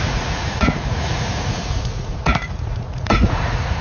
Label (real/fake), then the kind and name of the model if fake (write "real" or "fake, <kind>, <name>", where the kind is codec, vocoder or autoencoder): fake, vocoder, Vocos